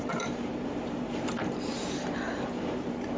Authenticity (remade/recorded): remade